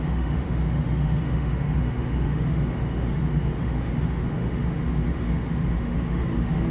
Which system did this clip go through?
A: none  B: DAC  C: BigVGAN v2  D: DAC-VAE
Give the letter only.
D